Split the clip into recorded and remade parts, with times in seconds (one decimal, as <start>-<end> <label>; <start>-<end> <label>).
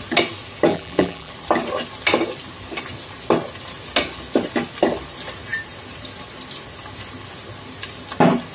0.0-0.7 recorded; 0.7-1.3 remade; 1.3-8.5 recorded